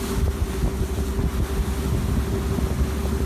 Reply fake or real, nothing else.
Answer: real